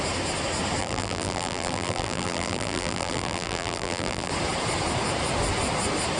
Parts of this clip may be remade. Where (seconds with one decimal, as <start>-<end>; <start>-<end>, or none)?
0.8-4.3